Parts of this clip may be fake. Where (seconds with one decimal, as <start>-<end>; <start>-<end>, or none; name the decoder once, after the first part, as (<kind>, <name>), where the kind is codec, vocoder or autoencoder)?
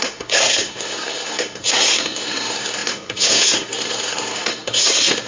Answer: 0.0-5.3 (codec, SNAC)